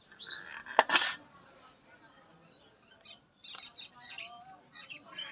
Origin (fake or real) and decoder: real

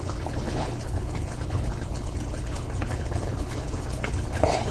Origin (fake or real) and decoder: fake, codec, HILCodec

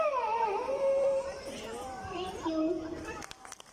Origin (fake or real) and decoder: fake, vocoder, BigVGAN v2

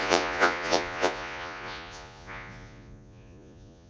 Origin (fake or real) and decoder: fake, vocoder, Vocos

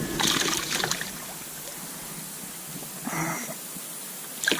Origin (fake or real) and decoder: real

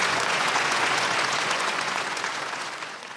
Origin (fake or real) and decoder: fake, vocoder, Vocos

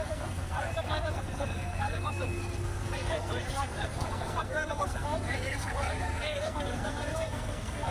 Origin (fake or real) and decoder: fake, codec, SNAC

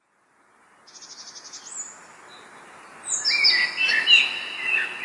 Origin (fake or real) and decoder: real